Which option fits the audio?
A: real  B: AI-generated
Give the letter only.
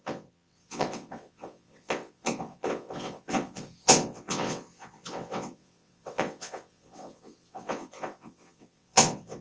B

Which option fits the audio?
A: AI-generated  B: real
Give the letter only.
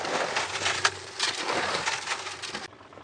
B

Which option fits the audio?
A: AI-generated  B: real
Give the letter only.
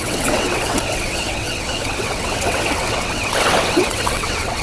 A